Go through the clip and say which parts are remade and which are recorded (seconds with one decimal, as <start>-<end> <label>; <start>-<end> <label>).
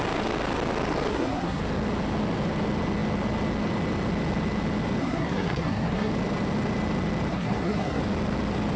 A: 0.0-1.1 recorded; 1.1-1.6 remade; 1.6-5.0 recorded; 5.0-6.1 remade; 6.1-7.3 recorded; 7.3-8.0 remade; 8.0-8.8 recorded